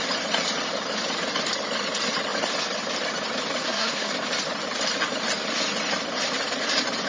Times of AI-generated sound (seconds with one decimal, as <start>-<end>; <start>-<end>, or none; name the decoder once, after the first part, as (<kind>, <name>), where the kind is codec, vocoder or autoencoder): 3.6-4.1 (codec, SNAC)